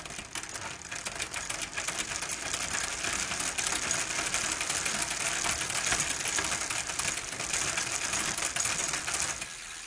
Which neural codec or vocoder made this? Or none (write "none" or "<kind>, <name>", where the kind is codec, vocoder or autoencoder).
none